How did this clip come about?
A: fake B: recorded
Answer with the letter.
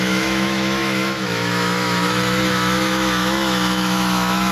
A